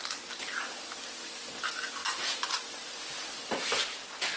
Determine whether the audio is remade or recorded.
recorded